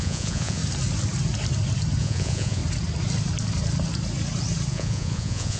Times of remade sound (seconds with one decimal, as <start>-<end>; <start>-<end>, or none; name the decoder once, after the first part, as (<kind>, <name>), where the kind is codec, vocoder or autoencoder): 0.0-0.6 (vocoder, Vocos); 2.0-2.6; 4.7-5.6